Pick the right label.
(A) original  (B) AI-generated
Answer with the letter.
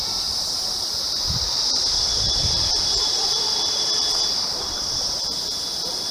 B